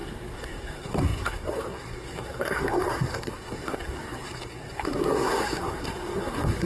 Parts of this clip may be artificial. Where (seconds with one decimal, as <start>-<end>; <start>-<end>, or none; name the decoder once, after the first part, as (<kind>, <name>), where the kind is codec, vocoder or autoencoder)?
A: 0.0-6.7 (codec, SNAC)